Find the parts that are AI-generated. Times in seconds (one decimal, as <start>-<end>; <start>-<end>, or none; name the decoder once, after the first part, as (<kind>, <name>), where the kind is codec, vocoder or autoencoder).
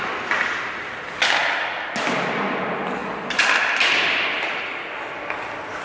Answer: 3.0-5.0 (vocoder, BigVGAN v2)